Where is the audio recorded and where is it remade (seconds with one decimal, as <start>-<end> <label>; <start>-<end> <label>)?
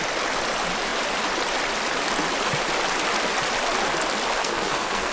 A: 0.0-4.4 recorded; 4.4-5.1 remade